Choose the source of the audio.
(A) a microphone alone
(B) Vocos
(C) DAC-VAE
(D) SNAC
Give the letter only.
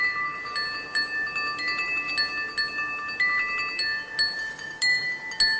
A